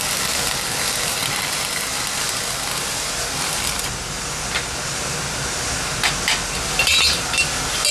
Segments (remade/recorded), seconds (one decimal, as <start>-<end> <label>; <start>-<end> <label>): 0.0-7.9 recorded